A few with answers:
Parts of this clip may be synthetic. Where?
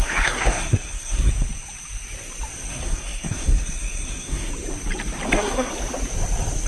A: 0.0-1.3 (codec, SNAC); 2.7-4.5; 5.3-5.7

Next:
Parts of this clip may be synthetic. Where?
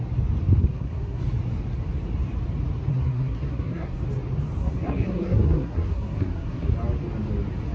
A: 0.6-1.2 (codec, SNAC); 2.9-4.0; 4.6-6.7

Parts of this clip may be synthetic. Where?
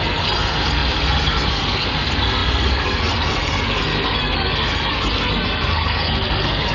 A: 0.0-6.7 (codec, SNAC)